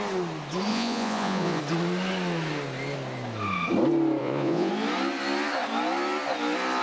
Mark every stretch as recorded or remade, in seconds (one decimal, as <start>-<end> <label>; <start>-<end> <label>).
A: 0.0-0.7 recorded; 0.7-1.6 remade; 1.6-4.2 recorded; 4.2-4.7 remade; 4.7-6.8 recorded